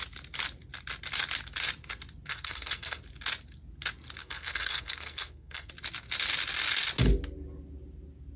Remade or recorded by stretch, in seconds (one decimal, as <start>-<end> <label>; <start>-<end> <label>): 0.0-2.3 recorded; 2.3-3.0 remade; 3.0-4.2 recorded; 4.2-5.7 remade; 5.7-8.4 recorded